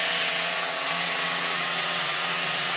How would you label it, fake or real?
fake